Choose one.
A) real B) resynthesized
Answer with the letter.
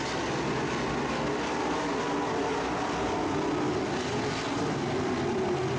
A